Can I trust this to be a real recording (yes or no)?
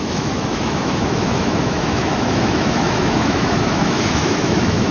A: no